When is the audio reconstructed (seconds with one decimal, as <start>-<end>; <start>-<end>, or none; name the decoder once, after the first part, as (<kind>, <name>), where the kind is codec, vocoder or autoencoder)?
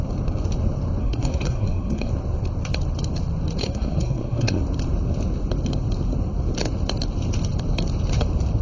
1.0-2.1 (codec, SNAC); 3.6-4.6